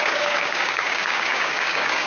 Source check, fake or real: fake